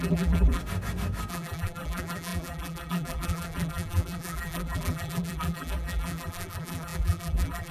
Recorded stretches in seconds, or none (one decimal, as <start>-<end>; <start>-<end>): 0.6-1.3

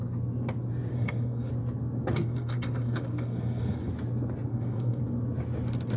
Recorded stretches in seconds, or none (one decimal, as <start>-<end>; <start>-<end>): 0.0-0.9; 1.5-2.2; 3.9-4.5; 5.0-6.0

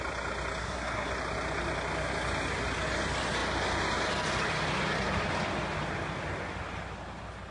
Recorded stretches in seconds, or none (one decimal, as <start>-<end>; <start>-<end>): 0.0-0.6; 1.1-7.5

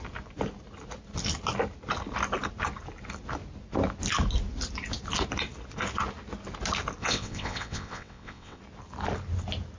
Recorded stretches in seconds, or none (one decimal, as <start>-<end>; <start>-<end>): 0.0-7.0; 8.6-9.8

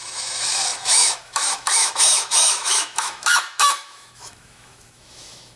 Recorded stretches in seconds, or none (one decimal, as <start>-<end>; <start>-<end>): none

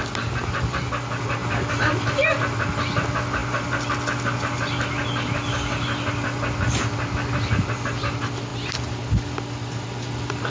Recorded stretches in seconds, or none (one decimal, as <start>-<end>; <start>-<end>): 0.0-1.4; 2.3-3.4; 7.3-10.5